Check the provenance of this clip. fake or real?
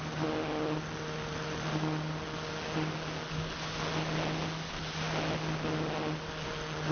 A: real